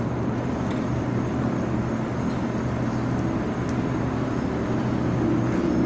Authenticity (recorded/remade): recorded